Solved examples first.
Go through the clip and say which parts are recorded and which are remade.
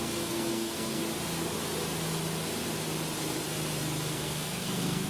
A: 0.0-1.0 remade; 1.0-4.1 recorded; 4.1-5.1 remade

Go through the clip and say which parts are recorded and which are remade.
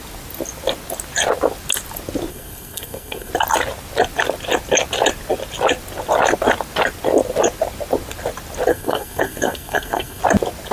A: 0.0-2.3 recorded; 2.3-3.3 remade; 3.3-8.7 recorded; 8.7-10.2 remade; 10.2-10.7 recorded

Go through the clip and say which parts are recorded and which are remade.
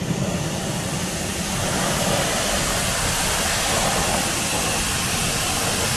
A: 0.0-6.0 recorded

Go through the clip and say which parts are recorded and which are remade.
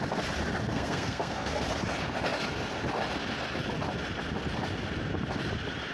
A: 0.0-0.7 recorded; 0.7-1.6 remade; 1.6-5.9 recorded